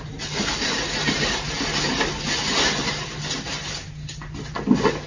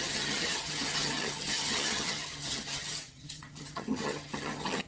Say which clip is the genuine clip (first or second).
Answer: first